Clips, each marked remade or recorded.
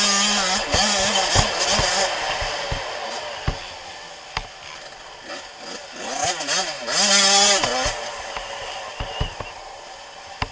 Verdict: recorded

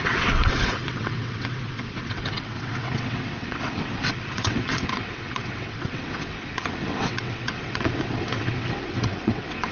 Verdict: remade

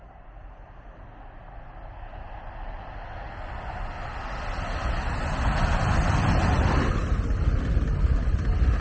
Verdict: recorded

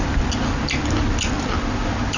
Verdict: recorded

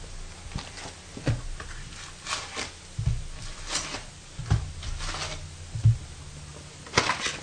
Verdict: recorded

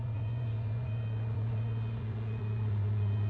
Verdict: remade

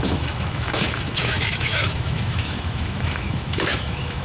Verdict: remade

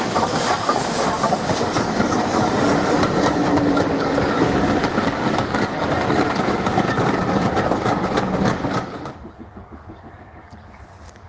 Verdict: remade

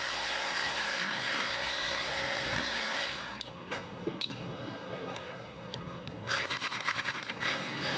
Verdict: remade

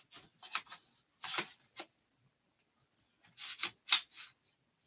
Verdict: recorded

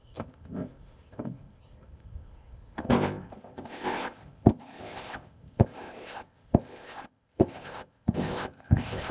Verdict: remade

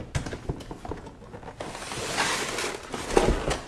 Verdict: recorded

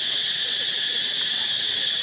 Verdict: remade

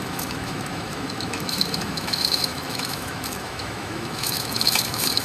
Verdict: remade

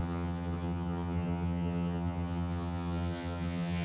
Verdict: remade